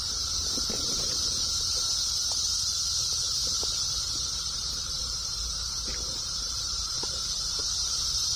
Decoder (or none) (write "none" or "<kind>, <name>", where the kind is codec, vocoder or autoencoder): vocoder, BigVGAN v2